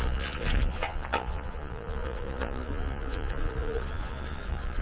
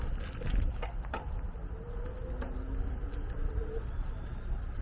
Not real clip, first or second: first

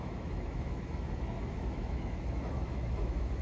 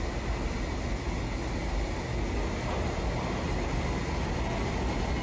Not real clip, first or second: first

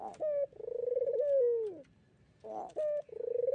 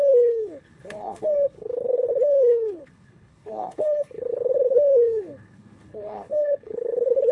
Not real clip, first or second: second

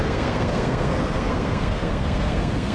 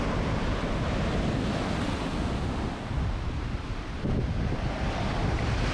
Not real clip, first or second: first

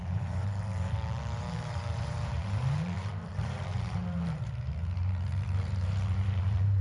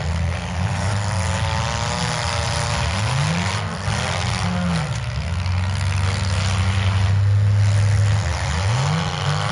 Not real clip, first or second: first